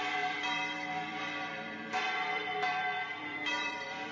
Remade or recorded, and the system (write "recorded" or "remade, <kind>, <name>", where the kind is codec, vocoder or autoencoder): remade, vocoder, BigVGAN v2